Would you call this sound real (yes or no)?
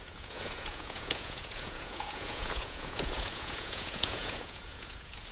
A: no